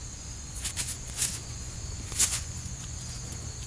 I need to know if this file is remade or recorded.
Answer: remade